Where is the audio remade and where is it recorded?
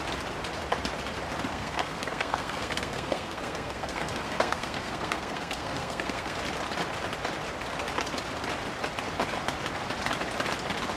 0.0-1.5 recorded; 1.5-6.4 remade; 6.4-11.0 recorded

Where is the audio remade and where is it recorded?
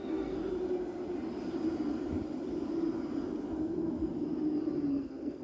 0.0-0.4 remade; 0.4-3.6 recorded; 3.6-4.1 remade; 4.1-4.9 recorded; 4.9-5.4 remade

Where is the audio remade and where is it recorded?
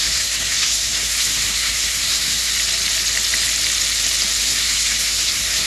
0.0-2.5 remade; 2.5-4.4 recorded; 4.4-5.7 remade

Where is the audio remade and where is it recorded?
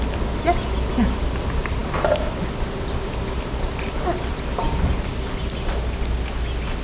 0.0-6.8 recorded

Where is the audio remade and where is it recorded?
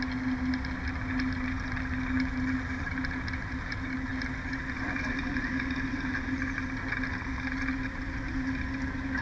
0.0-9.2 recorded